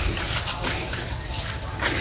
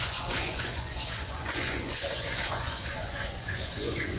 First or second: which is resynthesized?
second